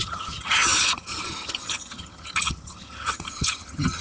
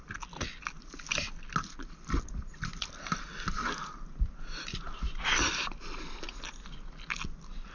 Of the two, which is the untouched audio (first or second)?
second